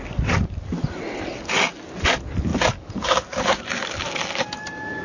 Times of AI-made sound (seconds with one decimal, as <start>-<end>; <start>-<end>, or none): 2.5-3.6